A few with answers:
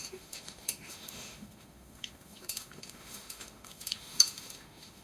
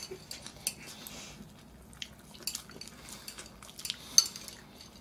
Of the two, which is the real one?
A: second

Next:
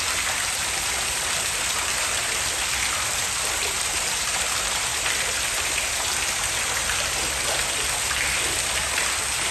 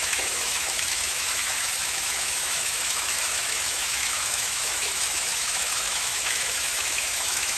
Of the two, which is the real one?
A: first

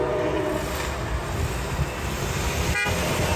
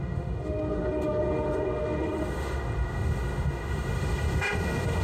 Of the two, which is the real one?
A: first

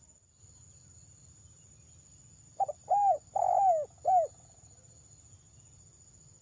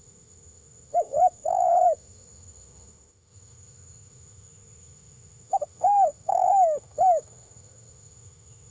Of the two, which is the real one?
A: first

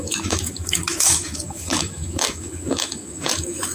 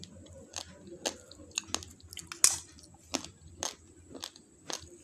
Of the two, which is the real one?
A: second